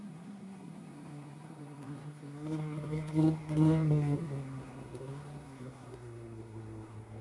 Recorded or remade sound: remade